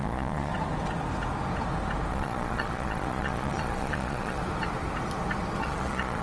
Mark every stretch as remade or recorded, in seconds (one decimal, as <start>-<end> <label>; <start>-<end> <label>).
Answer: 0.0-0.5 remade; 0.5-2.1 recorded; 2.1-4.4 remade; 4.4-5.6 recorded; 5.6-6.2 remade

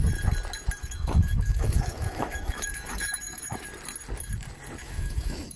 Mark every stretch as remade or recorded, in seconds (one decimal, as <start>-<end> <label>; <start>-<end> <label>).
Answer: 0.0-0.8 recorded; 0.8-3.6 remade; 3.6-4.8 recorded; 4.8-5.6 remade

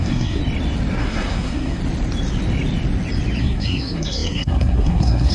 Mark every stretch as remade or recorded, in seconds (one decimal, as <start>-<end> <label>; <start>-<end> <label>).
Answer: 0.0-0.4 remade; 0.4-1.0 recorded; 1.0-1.8 remade; 1.8-3.4 recorded; 3.4-5.3 remade

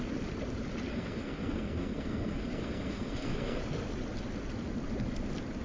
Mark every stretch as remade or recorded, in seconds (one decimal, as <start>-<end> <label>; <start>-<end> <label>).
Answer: 0.0-0.9 recorded; 0.9-3.6 remade; 3.6-5.6 recorded